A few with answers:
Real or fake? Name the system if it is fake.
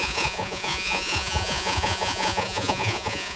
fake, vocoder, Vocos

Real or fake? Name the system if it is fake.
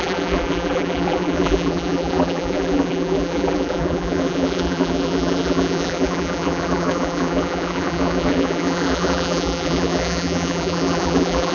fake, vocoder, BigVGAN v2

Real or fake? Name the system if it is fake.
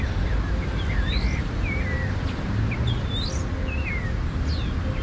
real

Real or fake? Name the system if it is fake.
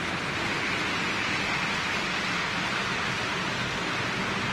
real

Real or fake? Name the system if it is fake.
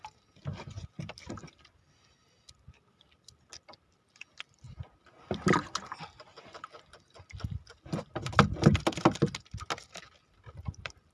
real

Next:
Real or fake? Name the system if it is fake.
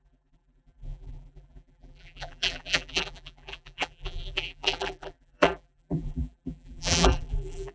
fake, vocoder, BigVGAN v2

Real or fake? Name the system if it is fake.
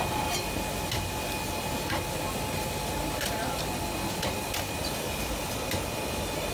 real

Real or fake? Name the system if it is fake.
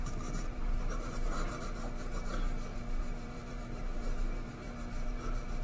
fake, vocoder, BigVGAN v2